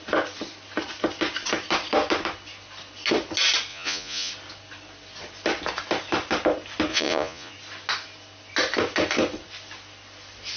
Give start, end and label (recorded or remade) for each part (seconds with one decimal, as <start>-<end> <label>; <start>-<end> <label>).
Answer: 0.0-3.7 recorded; 3.7-4.3 remade; 4.3-6.9 recorded; 6.9-7.5 remade; 7.5-10.6 recorded